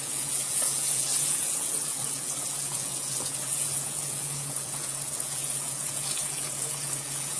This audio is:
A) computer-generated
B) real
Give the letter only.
A